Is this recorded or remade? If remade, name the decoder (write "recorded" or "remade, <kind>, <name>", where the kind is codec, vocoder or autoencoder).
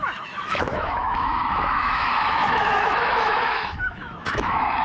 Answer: remade, autoencoder, DAC-VAE